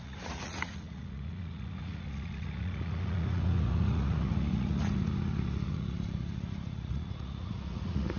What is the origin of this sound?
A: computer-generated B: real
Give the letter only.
A